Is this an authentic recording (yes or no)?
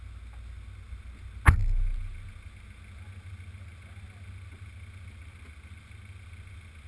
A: yes